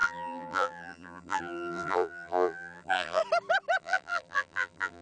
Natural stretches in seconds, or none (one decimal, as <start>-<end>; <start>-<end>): 3.2-3.8